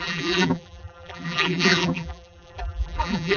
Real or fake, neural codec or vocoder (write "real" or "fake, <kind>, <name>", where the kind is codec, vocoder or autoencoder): fake, vocoder, BigVGAN v2